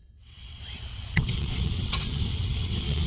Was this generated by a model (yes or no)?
yes